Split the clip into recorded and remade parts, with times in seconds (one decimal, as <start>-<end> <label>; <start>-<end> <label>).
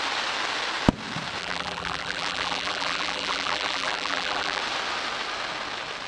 0.0-1.4 recorded; 1.4-4.6 remade; 4.6-6.1 recorded